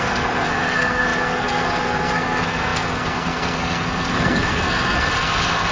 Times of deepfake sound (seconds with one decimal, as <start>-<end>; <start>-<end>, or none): 0.0-5.7